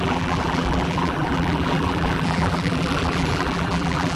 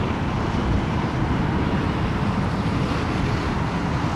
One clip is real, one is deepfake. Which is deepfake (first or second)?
first